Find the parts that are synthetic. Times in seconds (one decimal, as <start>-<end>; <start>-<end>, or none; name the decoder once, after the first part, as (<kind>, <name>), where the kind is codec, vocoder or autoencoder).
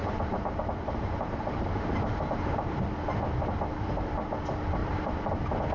0.0-2.8 (vocoder, BigVGAN v2); 4.8-5.3